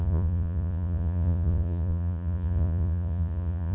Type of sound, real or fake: fake